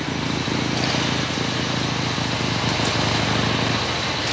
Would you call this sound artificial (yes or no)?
no